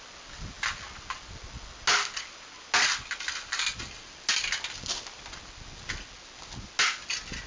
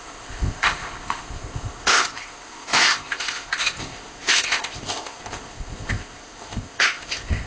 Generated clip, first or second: second